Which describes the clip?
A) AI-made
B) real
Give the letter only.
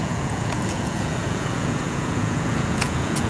A